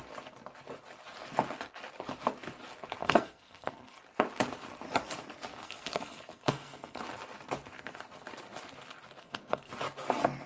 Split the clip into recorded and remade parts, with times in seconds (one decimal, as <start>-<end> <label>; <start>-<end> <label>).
0.0-3.0 recorded; 3.0-4.0 remade; 4.0-5.6 recorded; 5.6-7.0 remade; 7.0-9.2 recorded; 9.2-9.7 remade; 9.7-10.5 recorded